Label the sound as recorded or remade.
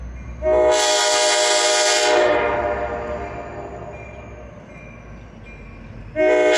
recorded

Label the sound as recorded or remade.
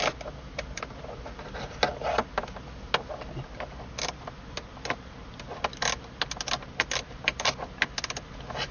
recorded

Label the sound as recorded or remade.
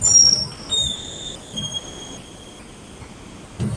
recorded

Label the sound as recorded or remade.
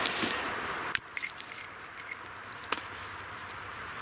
remade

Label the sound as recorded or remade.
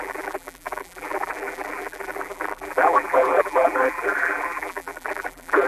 remade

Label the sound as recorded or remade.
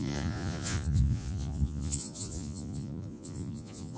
remade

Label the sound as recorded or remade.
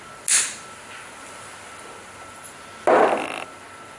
recorded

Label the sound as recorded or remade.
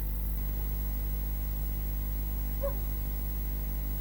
recorded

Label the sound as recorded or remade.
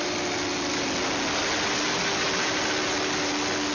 recorded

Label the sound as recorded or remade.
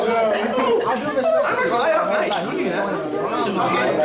recorded